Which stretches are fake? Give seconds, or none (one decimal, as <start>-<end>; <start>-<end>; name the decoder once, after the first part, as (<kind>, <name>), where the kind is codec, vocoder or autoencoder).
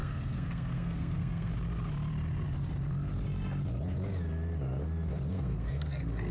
0.0-1.5 (codec, SNAC); 5.3-6.3